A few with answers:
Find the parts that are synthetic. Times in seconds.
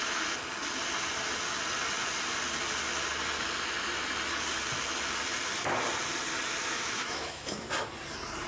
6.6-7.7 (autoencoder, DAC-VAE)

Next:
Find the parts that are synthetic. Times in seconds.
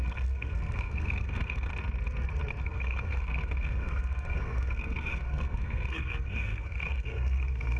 0.0-1.7 (codec, SNAC); 2.6-7.8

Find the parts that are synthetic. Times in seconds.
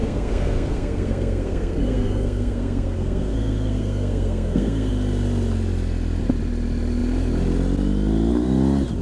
0.0-4.9 (codec, SNAC)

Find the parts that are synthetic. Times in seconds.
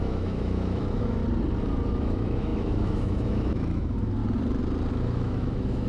0.0-1.2 (autoencoder, DAC-VAE); 2.0-4.2; 4.9-5.9